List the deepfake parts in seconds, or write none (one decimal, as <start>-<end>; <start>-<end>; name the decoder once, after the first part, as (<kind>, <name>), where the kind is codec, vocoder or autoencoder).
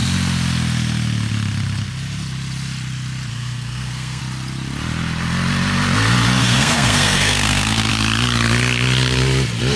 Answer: 3.3-4.2 (codec, SNAC); 6.4-7.9